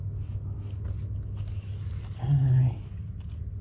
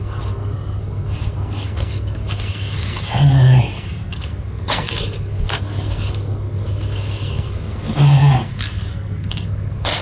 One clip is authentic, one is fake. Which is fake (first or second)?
second